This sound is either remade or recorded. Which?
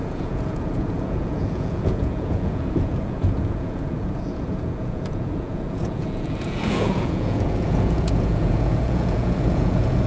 remade